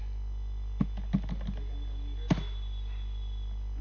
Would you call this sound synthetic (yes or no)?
no